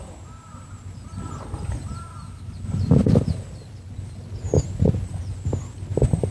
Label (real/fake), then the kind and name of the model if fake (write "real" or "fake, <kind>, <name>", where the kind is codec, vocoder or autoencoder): real